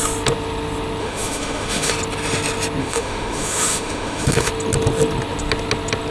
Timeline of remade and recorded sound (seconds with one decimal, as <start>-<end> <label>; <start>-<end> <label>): 0.0-1.0 recorded; 1.0-1.9 remade; 1.9-2.8 recorded; 2.8-4.5 remade; 4.5-6.1 recorded